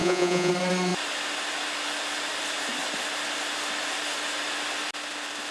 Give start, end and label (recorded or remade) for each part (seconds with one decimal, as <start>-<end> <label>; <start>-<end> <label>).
0.0-0.5 remade; 0.5-5.5 recorded